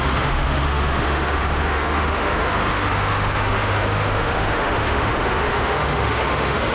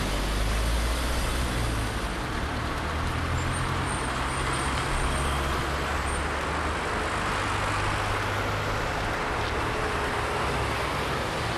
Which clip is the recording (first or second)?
second